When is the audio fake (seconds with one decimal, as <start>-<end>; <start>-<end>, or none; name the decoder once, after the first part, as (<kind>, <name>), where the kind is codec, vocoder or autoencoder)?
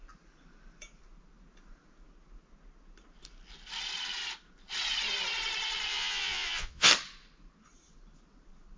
5.9-6.9 (vocoder, Vocos)